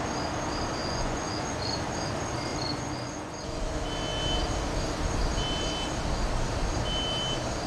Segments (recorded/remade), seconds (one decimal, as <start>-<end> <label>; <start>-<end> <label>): 0.0-0.8 recorded; 0.8-1.7 remade; 1.7-2.5 recorded; 2.5-3.6 remade; 3.6-7.7 recorded